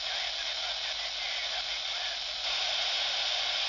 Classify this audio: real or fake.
real